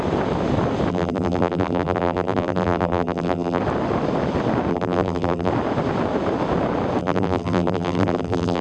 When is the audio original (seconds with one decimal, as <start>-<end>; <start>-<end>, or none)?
0.0-0.9; 3.6-4.7; 5.5-7.0